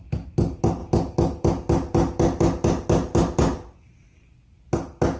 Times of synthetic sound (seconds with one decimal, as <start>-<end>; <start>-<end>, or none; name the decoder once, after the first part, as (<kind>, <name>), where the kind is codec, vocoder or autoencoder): none